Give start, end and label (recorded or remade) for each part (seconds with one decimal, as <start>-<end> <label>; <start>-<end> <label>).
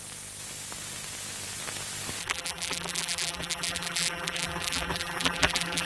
0.0-2.2 recorded; 2.2-5.9 remade